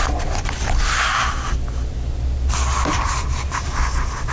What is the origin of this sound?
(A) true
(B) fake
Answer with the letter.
A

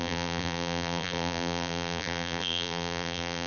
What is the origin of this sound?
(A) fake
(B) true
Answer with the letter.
A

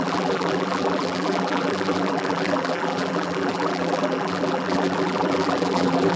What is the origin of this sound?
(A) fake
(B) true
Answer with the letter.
A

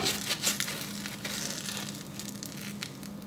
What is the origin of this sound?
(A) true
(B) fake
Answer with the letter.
A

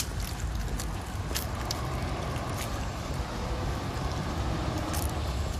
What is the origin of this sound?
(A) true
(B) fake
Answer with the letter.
B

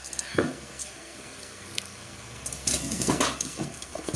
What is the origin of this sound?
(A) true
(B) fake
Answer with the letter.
B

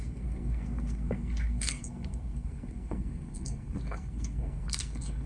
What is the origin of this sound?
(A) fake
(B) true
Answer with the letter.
A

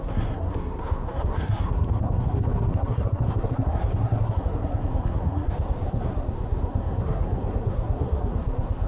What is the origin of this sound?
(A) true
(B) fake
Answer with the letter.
B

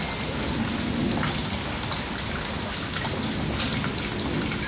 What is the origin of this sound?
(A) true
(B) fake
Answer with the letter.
A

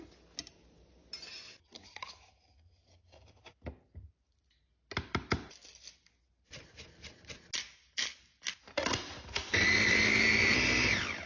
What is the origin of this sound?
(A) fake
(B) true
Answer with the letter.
B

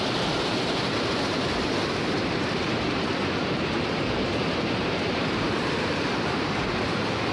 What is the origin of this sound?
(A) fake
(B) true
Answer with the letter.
A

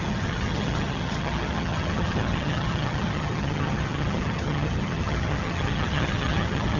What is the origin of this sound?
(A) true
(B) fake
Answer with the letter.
B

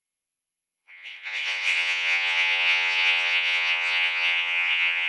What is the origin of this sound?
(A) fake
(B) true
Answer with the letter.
A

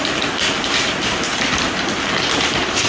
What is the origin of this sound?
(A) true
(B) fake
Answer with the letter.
A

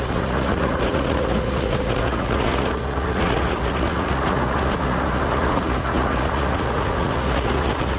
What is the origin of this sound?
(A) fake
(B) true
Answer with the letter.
A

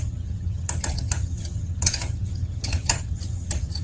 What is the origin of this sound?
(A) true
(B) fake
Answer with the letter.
B